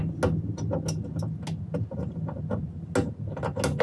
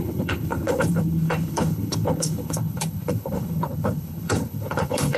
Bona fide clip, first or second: first